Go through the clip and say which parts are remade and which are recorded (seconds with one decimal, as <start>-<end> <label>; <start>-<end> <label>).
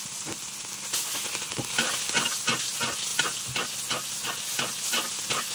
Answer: 0.0-5.5 recorded